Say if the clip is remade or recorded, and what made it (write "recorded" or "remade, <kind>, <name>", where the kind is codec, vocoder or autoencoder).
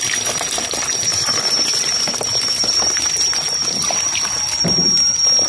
recorded